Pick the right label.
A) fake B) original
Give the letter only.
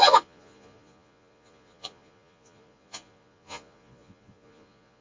A